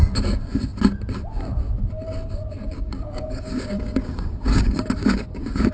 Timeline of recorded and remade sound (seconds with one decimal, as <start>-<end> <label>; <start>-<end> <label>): 0.0-2.6 recorded; 2.6-5.7 remade